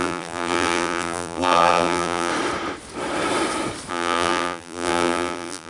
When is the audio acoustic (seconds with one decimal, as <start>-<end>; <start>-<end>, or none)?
2.3-3.9